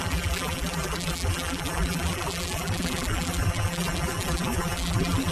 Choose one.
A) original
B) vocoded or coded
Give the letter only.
B